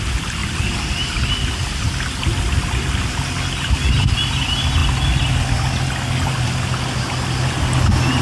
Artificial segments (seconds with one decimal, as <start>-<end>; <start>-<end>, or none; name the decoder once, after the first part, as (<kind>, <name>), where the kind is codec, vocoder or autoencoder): none

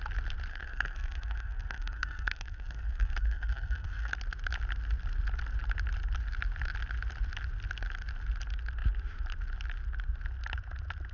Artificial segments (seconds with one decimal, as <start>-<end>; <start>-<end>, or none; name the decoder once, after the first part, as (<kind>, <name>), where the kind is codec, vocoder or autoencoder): 0.5-4.1 (codec, SNAC)

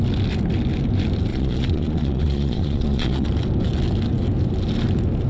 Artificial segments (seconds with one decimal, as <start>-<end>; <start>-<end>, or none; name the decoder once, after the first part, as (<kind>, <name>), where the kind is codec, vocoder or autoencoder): 1.3-3.3 (vocoder, Vocos)

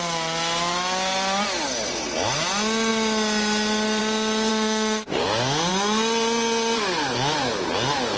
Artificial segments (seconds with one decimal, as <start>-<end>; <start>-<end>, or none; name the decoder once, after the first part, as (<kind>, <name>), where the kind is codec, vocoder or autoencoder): 4.5-5.2 (autoencoder, DAC-VAE)

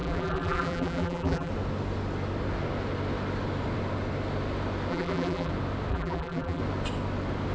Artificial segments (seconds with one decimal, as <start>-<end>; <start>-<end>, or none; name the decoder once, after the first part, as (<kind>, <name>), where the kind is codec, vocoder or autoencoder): 0.0-1.5 (vocoder, BigVGAN v2); 4.9-5.5; 5.9-6.6

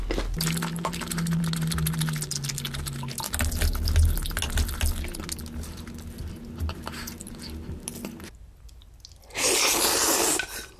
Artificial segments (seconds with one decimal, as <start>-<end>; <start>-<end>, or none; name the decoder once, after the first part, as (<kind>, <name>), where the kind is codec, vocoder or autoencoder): none

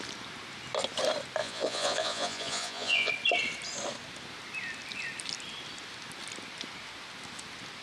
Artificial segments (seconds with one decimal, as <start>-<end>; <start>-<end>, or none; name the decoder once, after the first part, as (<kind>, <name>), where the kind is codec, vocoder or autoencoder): 1.4-3.1 (vocoder, Vocos)

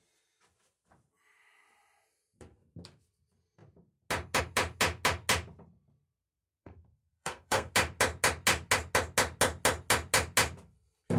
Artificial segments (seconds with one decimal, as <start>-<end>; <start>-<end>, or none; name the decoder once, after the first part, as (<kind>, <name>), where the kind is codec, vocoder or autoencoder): 6.6-7.7 (codec, SNAC)